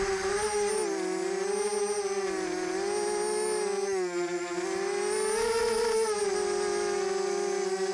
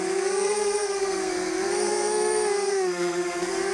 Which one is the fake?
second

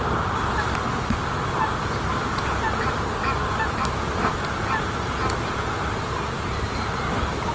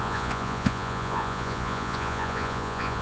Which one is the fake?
second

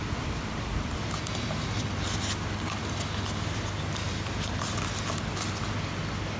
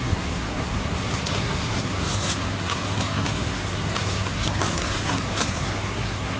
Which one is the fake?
second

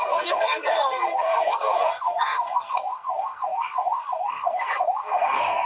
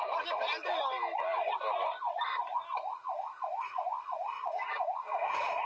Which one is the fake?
first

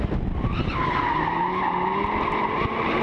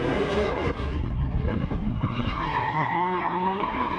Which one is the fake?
second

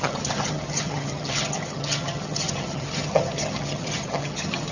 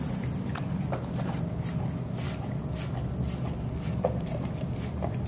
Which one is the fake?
first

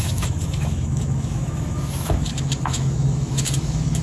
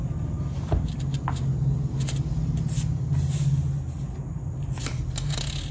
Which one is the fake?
first